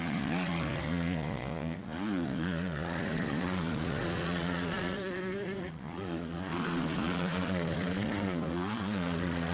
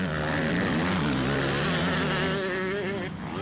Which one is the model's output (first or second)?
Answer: first